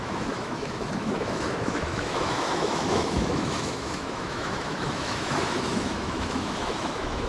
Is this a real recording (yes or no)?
no